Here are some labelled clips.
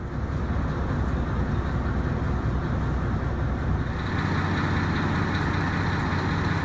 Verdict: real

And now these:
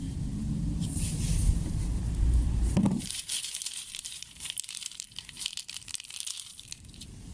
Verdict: fake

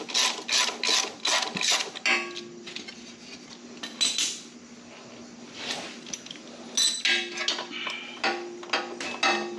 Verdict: real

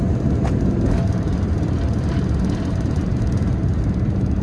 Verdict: fake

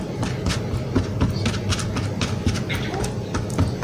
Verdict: real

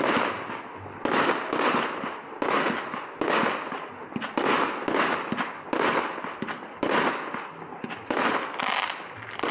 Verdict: real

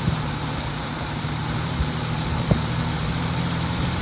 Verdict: fake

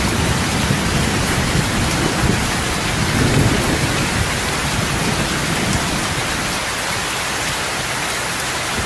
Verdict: real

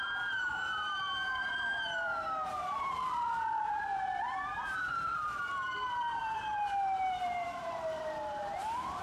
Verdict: fake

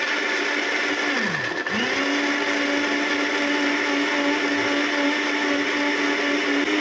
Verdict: real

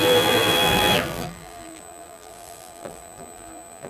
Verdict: fake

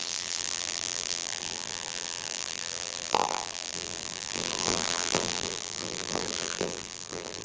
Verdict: fake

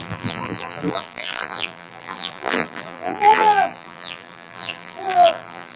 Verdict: fake